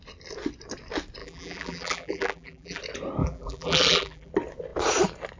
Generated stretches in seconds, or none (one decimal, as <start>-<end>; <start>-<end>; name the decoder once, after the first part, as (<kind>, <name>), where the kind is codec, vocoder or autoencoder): 1.2-2.8 (vocoder, BigVGAN v2); 3.2-4.3